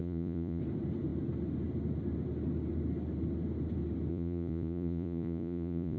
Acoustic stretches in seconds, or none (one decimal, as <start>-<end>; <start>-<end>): 0.6-4.1